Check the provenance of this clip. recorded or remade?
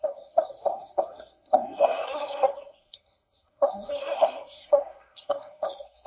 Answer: remade